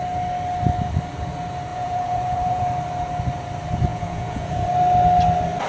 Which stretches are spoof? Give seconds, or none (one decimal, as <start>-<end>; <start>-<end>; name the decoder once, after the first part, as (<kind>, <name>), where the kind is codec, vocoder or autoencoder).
1.7-2.6 (vocoder, Vocos); 3.9-4.7